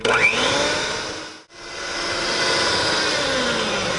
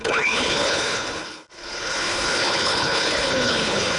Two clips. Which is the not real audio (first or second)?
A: second